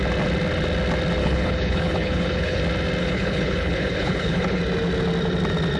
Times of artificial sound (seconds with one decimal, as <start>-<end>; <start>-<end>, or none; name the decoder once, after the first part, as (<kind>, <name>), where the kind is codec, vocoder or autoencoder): 1.2-2.6 (codec, HILCodec); 3.0-4.6